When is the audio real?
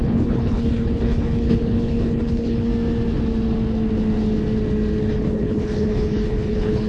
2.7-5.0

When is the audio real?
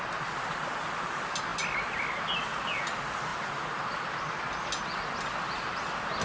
0.0-6.2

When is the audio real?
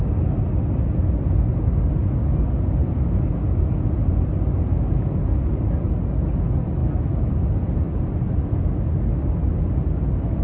0.0-10.4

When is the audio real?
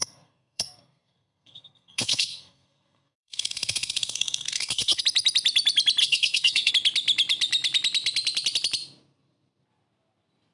5.0-6.0; 6.7-10.5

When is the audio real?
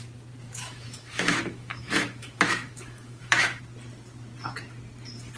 0.0-0.4; 3.6-5.4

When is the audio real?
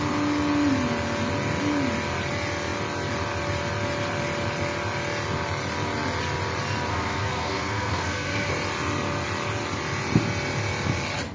0.0-6.9; 8.5-11.3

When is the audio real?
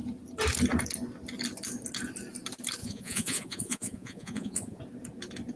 0.0-2.8; 4.8-5.6